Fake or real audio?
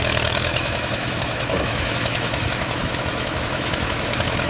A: fake